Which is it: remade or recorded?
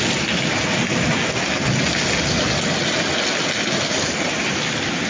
recorded